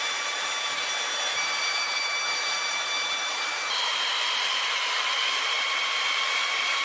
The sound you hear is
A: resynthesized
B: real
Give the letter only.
A